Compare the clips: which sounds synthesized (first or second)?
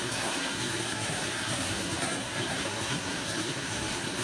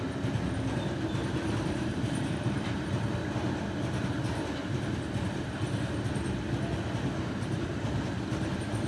first